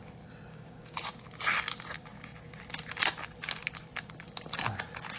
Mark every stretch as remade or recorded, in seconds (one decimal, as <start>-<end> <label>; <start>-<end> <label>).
0.0-0.5 recorded; 0.5-1.1 remade; 1.1-5.2 recorded